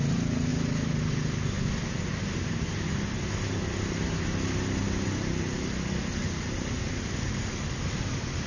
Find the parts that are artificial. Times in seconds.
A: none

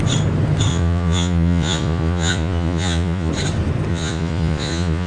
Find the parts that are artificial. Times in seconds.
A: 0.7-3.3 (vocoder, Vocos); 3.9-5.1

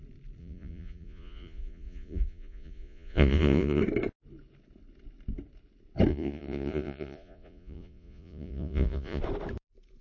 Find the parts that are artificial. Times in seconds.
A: 0.4-3.8 (vocoder, Vocos); 6.1-9.2

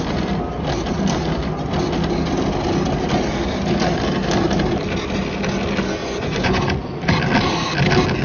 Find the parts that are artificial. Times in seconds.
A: 6.0-6.8 (vocoder, Vocos)

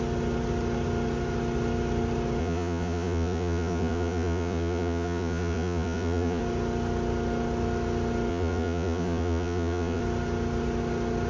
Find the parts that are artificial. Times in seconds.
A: 2.4-6.4 (vocoder, Vocos); 8.3-10.0